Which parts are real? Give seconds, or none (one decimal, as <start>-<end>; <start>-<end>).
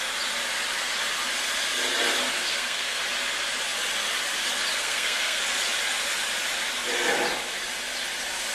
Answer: 0.0-2.5; 3.0-4.8; 5.4-8.5